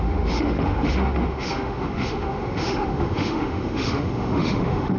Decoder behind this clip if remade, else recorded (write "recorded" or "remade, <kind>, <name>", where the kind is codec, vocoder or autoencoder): remade, autoencoder, DAC-VAE